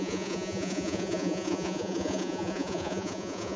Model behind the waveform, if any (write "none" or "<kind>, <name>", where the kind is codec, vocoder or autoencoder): vocoder, Vocos